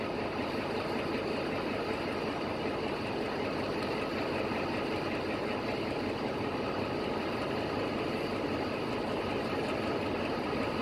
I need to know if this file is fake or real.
real